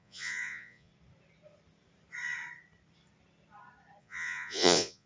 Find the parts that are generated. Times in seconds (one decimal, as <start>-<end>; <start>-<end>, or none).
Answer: 0.0-0.9; 4.0-5.1